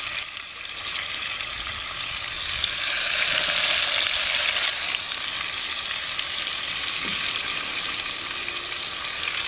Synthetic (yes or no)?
no